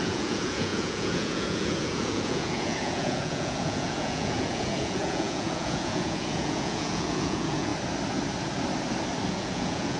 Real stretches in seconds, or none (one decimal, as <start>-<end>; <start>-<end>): 7.7-9.3